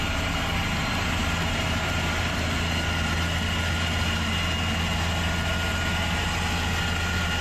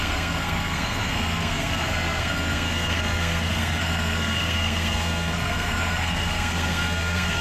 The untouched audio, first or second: first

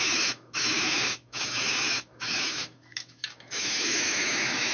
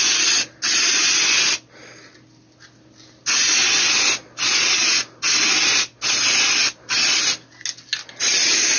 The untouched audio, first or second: second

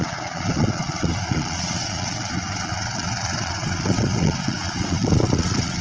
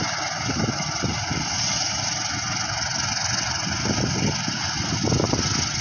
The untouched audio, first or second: second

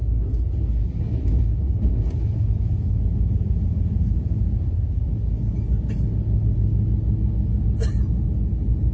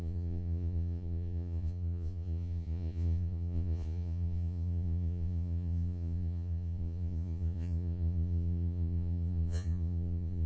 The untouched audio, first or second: first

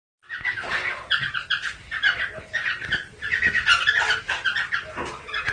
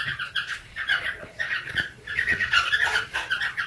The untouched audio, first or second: first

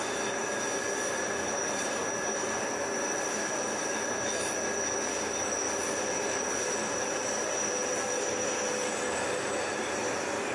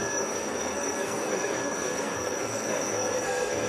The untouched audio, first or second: first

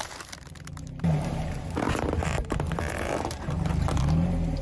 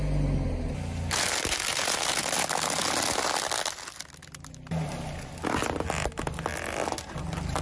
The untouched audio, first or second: second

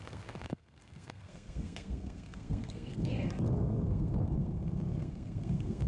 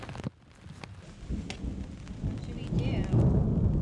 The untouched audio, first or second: second